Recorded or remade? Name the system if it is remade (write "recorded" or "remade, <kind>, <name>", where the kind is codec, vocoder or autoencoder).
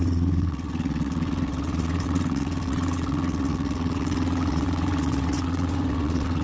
remade, vocoder, WaveNeXt